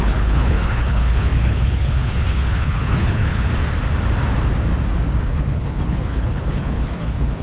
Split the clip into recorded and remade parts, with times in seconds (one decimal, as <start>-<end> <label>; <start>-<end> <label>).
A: 0.0-3.5 remade; 3.5-5.2 recorded; 5.2-7.4 remade